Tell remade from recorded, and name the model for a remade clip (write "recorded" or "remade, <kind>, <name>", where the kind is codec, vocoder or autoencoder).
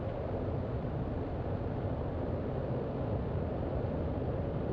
recorded